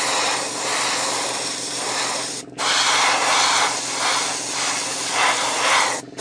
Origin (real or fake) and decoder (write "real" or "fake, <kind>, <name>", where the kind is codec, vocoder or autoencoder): real